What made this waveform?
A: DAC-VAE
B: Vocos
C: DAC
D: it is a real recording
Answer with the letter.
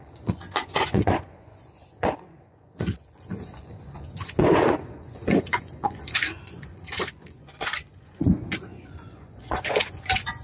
B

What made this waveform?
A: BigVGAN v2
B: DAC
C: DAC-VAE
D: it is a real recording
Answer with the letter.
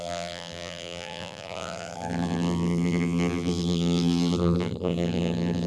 A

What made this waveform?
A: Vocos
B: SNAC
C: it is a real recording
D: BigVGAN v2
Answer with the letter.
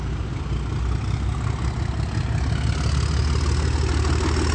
C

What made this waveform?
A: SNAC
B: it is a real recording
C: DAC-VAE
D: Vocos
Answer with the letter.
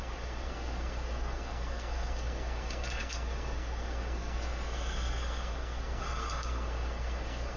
A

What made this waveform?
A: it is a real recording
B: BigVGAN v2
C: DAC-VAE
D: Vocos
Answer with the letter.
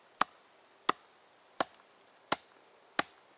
A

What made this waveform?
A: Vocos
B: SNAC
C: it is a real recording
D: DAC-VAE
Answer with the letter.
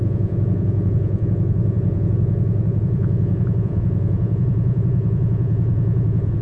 A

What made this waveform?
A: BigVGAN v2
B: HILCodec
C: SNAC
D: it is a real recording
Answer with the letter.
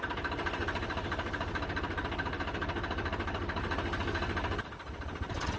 D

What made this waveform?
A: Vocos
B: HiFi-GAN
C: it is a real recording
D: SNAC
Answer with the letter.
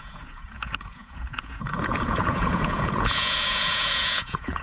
A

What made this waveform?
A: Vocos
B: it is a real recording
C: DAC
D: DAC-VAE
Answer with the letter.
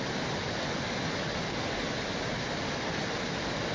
B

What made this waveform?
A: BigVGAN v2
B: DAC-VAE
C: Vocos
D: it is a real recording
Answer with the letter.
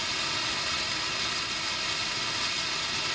D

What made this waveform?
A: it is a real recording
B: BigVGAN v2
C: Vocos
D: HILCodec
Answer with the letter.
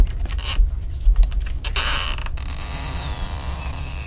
B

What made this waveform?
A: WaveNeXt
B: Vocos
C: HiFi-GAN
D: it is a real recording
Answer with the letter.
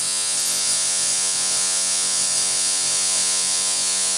B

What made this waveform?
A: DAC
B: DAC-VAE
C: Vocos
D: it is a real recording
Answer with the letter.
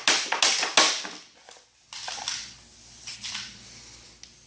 D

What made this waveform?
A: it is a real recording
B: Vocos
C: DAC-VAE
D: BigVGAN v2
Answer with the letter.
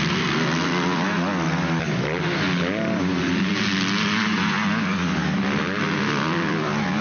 A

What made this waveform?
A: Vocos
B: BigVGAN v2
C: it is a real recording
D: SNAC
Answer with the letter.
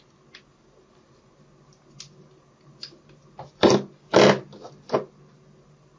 C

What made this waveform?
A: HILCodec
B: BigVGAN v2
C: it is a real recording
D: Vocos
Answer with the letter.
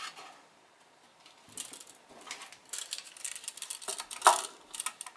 C